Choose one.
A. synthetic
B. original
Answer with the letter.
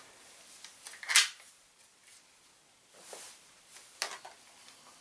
B